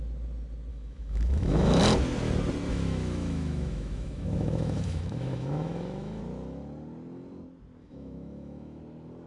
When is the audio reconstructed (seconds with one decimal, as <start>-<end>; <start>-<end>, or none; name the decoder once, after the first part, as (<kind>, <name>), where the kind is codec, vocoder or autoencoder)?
0.7-1.8 (autoencoder, DAC-VAE); 2.7-6.2; 7.8-8.8